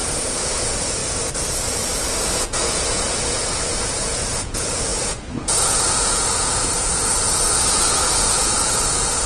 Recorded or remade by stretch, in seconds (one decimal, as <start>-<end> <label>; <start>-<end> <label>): 0.0-1.0 remade; 1.0-2.3 recorded; 2.3-9.3 remade